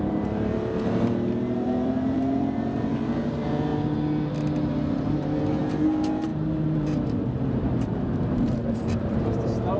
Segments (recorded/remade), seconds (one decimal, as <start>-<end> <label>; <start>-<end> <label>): 0.0-3.7 remade; 3.7-5.6 recorded; 5.6-9.8 remade